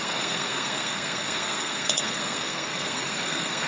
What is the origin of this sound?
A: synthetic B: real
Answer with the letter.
A